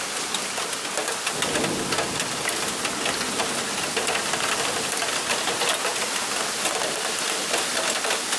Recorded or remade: recorded